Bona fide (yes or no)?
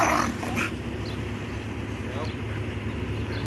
yes